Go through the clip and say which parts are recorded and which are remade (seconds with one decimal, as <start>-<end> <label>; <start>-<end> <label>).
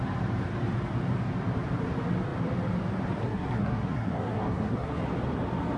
0.0-3.2 recorded; 3.2-5.0 remade; 5.0-5.8 recorded